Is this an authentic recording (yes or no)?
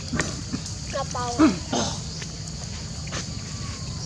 yes